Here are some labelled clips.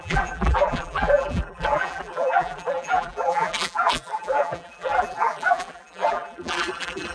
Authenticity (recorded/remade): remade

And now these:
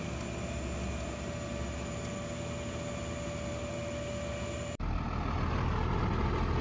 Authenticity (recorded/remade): recorded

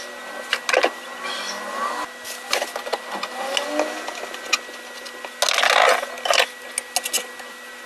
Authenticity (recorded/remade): recorded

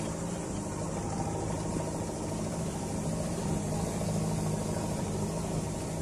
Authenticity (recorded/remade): recorded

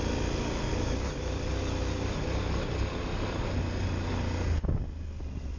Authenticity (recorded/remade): recorded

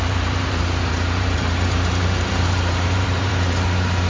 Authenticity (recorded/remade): remade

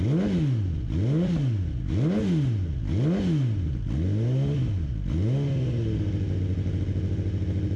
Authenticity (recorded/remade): recorded